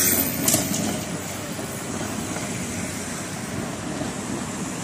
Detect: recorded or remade recorded